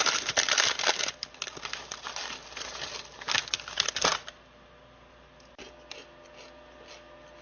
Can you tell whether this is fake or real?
real